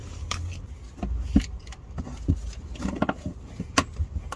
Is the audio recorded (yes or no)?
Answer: yes